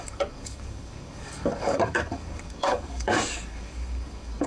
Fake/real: fake